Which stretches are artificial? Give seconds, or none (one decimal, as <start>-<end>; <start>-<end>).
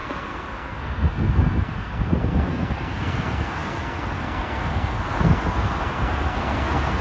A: 0.0-7.0